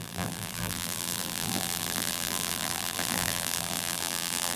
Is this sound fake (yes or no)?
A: yes